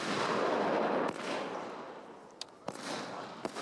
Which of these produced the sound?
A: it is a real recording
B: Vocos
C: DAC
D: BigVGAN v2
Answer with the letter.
A